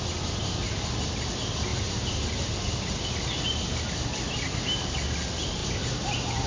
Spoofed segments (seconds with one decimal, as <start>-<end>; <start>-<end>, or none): 1.7-2.5